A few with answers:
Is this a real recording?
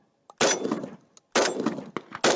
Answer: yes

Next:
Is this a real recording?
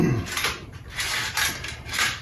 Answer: yes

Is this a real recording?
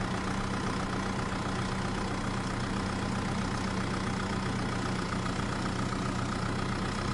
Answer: yes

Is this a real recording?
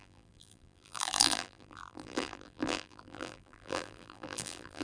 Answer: no